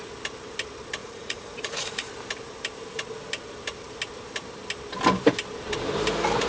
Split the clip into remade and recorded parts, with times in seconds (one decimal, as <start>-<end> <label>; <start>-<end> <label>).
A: 0.0-1.0 recorded; 1.0-2.1 remade; 2.1-6.5 recorded